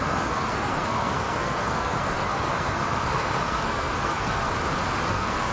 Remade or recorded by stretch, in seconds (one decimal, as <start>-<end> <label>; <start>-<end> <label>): 0.0-4.5 remade; 4.5-5.1 recorded; 5.1-5.5 remade